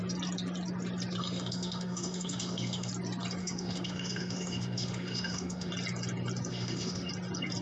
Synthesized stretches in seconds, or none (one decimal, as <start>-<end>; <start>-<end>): 1.2-2.9; 3.4-5.7; 6.5-7.1

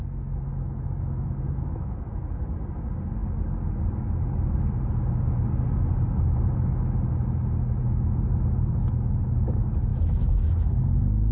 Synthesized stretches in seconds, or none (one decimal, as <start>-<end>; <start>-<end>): 0.5-2.2; 9.9-10.5

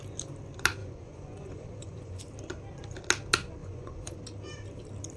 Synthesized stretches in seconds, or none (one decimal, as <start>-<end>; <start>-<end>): 0.8-2.2; 3.6-4.2

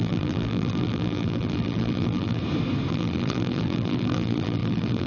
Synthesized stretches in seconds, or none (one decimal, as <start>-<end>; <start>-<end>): 0.0-2.4; 2.9-5.1

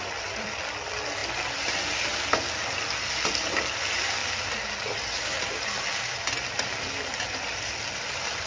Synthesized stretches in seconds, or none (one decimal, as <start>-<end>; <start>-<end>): none

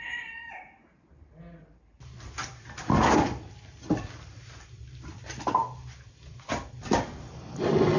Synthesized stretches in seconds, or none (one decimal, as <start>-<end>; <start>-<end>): none

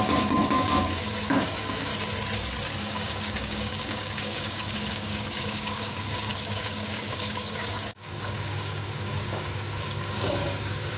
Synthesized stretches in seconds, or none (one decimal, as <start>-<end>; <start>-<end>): 0.0-1.9; 2.8-11.0

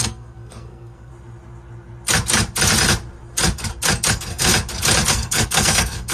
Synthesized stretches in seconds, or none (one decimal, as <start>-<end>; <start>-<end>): 0.0-1.1; 4.1-4.5; 5.1-6.1